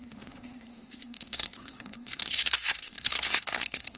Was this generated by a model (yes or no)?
yes